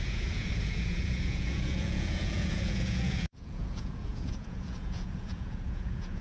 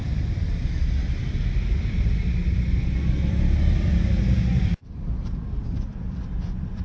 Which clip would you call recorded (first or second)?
second